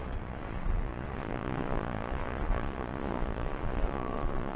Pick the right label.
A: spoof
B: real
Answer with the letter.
A